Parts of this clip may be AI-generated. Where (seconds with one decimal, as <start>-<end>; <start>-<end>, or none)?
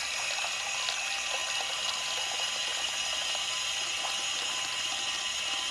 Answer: none